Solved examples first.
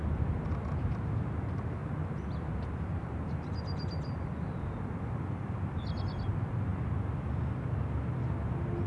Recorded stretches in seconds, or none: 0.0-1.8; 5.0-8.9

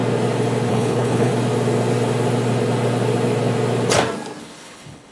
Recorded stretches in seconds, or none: 0.0-0.7; 1.3-4.4